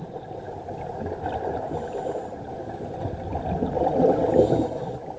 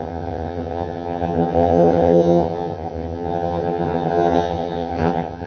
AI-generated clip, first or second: second